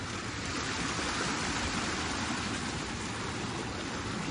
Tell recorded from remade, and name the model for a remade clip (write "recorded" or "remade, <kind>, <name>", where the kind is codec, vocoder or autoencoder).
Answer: recorded